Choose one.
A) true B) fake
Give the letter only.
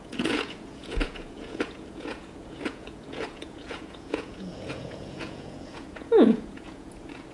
B